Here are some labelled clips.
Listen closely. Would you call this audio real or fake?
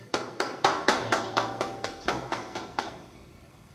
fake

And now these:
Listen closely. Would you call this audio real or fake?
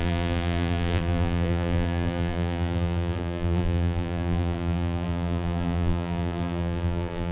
fake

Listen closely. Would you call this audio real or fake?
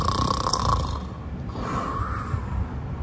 real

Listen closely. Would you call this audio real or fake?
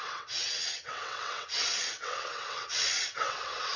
fake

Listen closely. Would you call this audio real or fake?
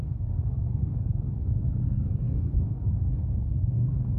fake